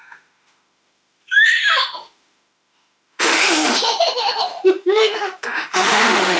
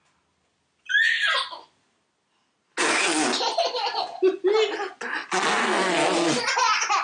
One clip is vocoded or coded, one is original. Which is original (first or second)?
second